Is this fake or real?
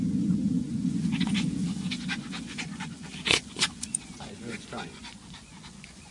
fake